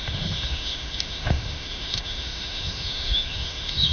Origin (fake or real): fake